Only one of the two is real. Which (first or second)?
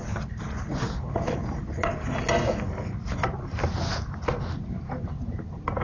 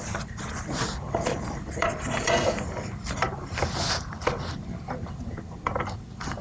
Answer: first